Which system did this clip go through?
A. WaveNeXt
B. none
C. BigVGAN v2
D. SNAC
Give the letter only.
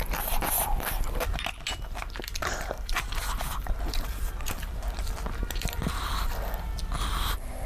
C